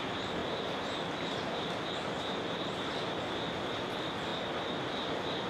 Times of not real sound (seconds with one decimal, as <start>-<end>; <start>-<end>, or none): none